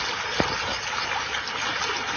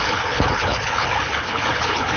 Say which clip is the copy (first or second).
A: second